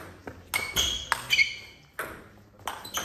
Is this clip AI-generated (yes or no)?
no